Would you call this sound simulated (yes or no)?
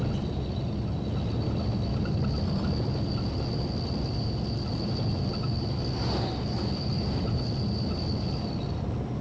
no